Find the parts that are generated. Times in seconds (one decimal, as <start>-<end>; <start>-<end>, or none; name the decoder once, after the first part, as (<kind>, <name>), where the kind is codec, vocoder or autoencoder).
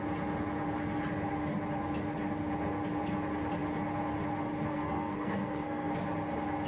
4.7-5.9 (codec, SNAC)